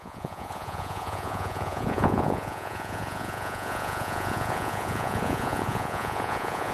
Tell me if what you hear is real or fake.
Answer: fake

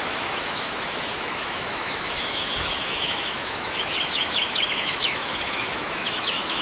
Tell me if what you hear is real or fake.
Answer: fake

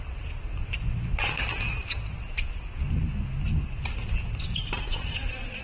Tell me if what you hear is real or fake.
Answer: real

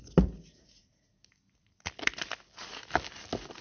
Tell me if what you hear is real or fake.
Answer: real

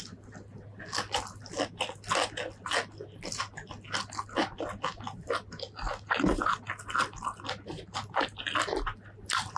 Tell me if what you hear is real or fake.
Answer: real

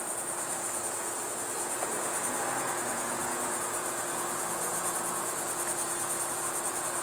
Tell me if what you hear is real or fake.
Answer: fake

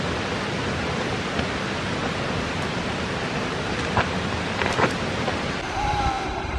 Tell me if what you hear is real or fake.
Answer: real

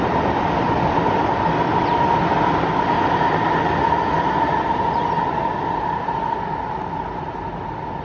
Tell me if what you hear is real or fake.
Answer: real